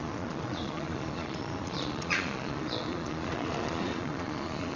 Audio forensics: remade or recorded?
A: remade